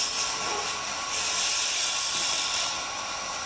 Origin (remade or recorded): remade